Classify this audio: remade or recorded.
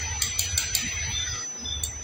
recorded